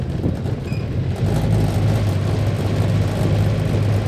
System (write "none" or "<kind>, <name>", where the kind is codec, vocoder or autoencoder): none